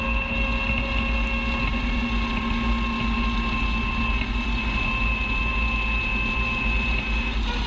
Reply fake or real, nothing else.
real